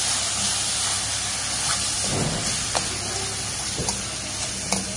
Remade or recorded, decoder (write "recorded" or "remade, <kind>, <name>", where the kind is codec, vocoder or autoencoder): recorded